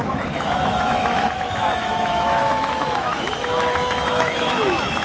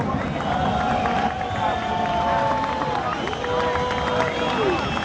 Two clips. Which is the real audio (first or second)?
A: second